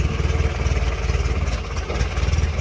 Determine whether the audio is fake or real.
real